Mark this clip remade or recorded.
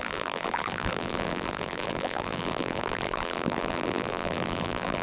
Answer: remade